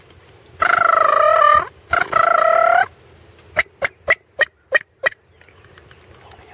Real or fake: real